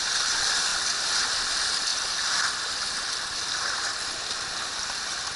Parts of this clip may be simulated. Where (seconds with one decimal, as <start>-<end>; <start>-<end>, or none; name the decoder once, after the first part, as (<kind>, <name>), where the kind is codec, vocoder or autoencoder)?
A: none